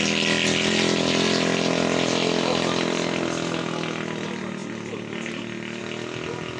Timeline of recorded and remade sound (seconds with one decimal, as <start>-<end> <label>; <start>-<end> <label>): 0.0-6.6 recorded